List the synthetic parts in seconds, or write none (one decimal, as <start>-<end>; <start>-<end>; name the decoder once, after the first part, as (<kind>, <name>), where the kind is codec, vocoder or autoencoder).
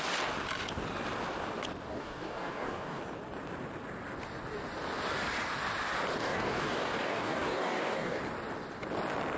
1.9-3.0 (codec, DAC); 6.2-8.2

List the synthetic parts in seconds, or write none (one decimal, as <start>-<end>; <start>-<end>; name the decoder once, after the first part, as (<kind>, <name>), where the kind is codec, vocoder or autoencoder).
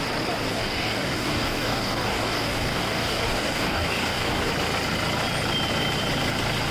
0.5-4.5 (codec, DAC)